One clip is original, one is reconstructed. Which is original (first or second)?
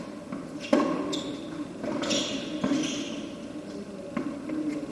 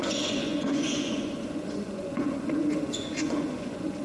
first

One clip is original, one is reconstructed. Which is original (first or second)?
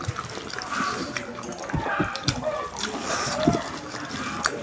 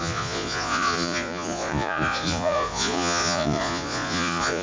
first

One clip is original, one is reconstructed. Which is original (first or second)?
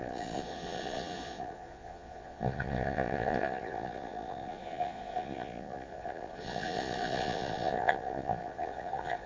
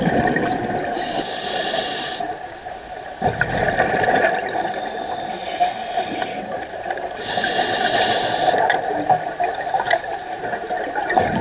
second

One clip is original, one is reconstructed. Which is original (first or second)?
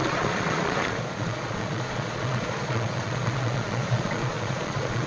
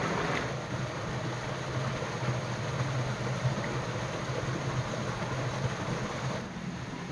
second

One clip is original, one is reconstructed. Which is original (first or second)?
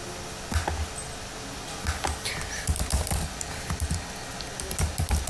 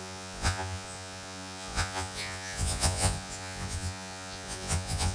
first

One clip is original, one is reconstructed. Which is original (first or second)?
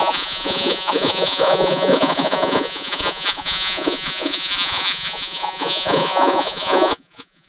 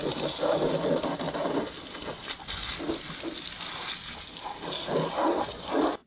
second